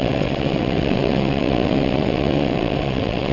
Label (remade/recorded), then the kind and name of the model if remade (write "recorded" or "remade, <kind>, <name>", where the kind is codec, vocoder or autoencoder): remade, vocoder, WaveNeXt